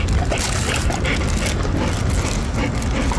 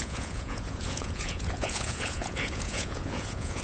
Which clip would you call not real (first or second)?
second